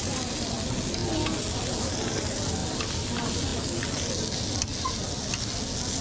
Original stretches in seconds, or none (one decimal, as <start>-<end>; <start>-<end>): 0.0-6.0